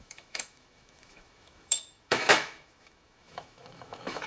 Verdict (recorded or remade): remade